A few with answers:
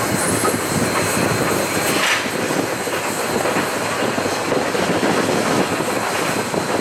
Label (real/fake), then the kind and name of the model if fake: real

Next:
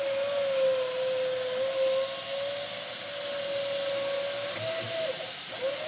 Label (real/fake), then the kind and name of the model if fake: real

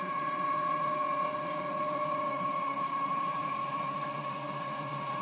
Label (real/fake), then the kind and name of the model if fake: fake, vocoder, WaveNeXt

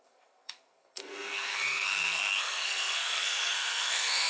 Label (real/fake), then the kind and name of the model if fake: fake, codec, SNAC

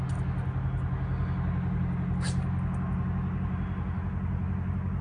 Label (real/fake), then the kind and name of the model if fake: real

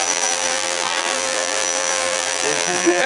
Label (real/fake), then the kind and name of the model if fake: fake, vocoder, BigVGAN v2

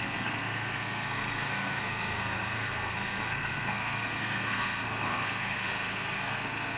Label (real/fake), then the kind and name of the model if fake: fake, codec, SNAC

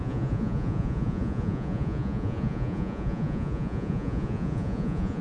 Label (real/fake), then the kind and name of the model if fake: fake, vocoder, Vocos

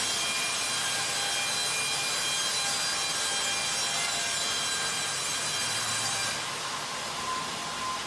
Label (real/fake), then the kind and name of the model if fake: real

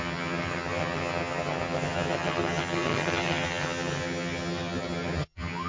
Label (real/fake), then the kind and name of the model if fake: fake, vocoder, HiFi-GAN